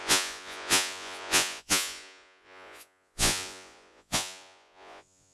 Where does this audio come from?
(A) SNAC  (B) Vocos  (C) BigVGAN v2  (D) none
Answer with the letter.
B